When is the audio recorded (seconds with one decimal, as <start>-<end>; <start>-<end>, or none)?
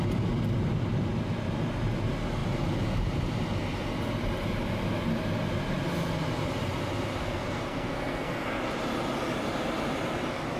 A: 0.0-7.2; 8.6-10.6